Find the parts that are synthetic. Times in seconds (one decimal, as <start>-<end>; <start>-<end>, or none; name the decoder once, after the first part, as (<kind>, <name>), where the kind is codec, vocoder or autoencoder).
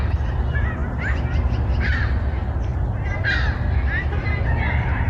none